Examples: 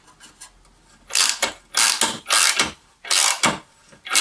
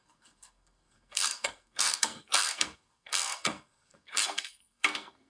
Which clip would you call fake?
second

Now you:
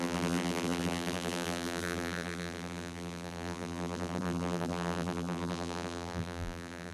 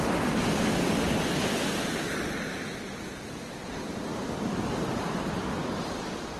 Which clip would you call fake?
first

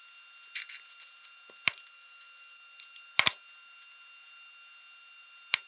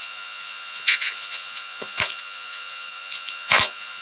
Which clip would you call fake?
second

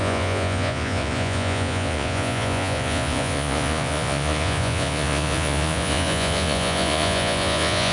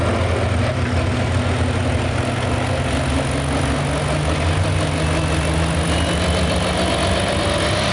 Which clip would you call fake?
first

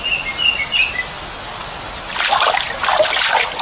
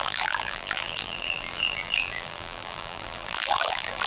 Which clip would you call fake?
second